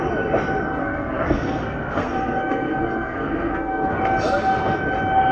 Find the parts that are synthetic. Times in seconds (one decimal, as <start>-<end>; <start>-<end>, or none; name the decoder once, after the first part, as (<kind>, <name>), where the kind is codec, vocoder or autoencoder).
0.8-4.0 (codec, SNAC)